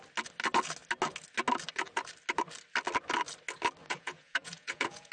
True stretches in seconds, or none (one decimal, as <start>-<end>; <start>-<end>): 0.0-3.8